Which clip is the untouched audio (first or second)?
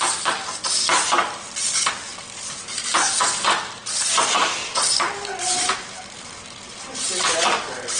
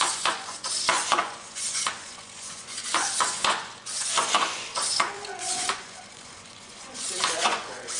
first